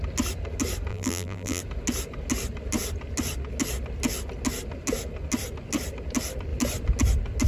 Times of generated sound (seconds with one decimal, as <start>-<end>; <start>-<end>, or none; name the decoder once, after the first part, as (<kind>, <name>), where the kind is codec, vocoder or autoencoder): 0.9-1.6 (vocoder, BigVGAN v2)